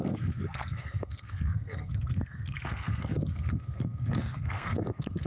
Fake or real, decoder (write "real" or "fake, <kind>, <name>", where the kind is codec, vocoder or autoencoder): fake, codec, SNAC